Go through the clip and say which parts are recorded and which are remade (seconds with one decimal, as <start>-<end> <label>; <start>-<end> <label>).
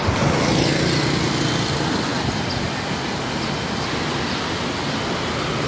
0.0-5.7 recorded